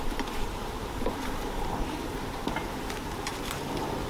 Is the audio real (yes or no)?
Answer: no